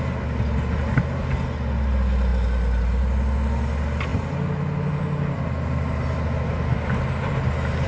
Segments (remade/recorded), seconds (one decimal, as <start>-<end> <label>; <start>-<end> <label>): 0.0-7.9 recorded